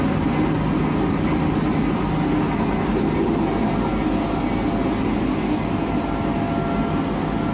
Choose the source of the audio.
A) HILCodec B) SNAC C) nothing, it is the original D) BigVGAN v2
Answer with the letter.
C